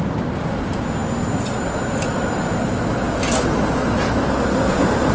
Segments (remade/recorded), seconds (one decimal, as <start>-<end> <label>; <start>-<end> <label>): 0.0-5.1 recorded